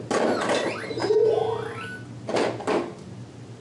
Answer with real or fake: real